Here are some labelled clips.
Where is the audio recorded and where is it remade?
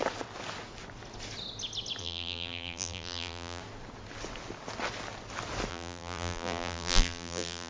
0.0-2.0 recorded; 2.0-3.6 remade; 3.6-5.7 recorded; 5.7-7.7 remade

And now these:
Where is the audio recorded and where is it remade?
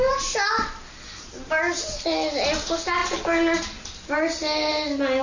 0.0-5.2 recorded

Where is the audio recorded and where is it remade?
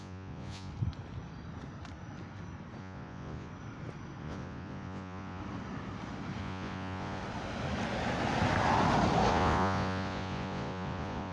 0.0-0.7 remade; 0.7-2.8 recorded; 2.8-3.5 remade; 3.5-4.2 recorded; 4.2-5.4 remade; 5.4-6.4 recorded; 6.4-7.2 remade; 7.2-9.3 recorded; 9.3-11.3 remade